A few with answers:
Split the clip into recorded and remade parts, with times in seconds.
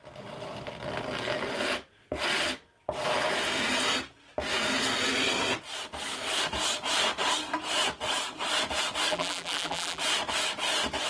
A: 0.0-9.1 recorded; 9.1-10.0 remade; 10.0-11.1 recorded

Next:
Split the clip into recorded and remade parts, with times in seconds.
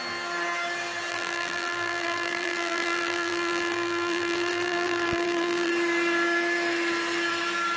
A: 0.0-1.1 recorded; 1.1-5.7 remade; 5.7-7.8 recorded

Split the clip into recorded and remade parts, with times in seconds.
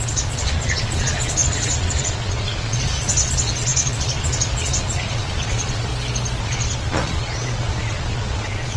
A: 0.0-5.9 remade; 5.9-6.4 recorded; 6.4-8.8 remade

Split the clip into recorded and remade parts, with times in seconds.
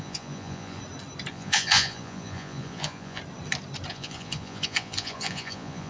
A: 0.0-0.8 remade; 0.8-1.3 recorded; 1.3-3.2 remade; 3.2-3.9 recorded; 3.9-5.9 remade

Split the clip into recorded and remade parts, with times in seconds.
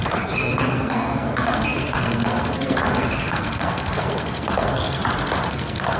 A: 0.0-5.0 remade; 5.0-5.5 recorded; 5.5-6.0 remade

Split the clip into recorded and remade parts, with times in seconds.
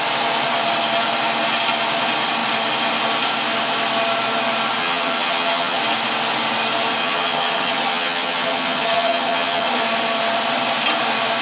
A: 0.0-4.8 recorded; 4.8-5.8 remade; 5.8-7.0 recorded; 7.0-9.8 remade; 9.8-11.4 recorded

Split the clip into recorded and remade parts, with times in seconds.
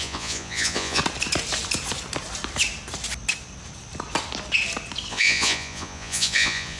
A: 0.0-1.0 remade; 1.0-5.1 recorded; 5.1-6.8 remade